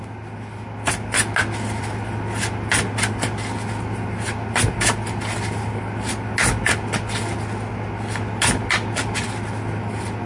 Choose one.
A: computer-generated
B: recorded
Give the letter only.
B